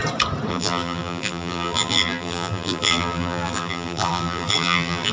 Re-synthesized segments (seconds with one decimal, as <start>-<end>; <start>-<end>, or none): 0.5-5.1